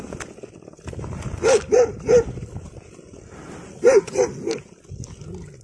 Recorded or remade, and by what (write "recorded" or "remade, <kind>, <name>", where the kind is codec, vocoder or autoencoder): recorded